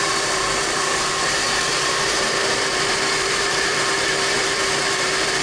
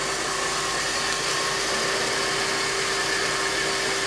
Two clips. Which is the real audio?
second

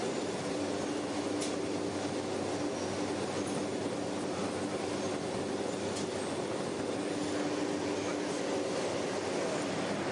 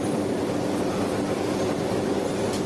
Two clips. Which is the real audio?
first